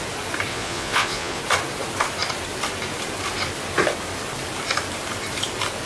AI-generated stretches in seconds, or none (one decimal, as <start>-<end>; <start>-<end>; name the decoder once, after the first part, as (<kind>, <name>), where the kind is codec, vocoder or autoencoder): 0.5-1.4 (vocoder, Vocos)